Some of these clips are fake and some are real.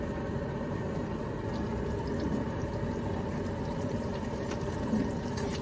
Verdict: real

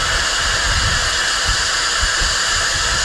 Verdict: real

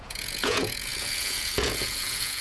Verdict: fake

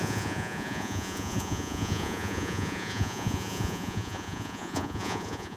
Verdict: fake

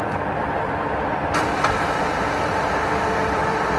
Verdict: fake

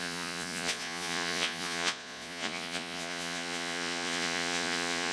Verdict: fake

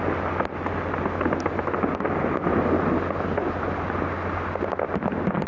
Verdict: real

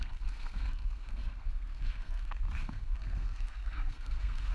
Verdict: fake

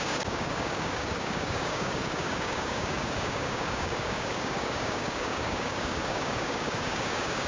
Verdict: fake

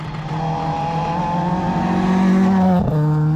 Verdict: real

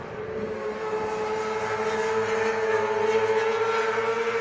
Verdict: real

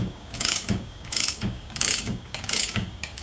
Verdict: fake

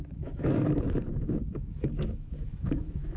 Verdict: fake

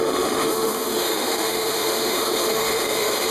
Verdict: fake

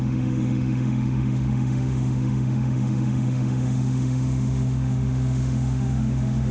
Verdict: fake